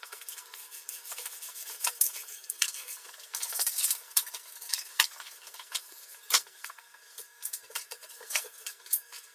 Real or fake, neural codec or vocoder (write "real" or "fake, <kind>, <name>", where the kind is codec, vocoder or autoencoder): fake, codec, SNAC